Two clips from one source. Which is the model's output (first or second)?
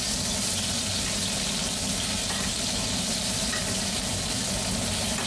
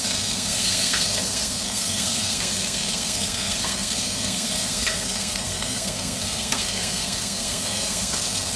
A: second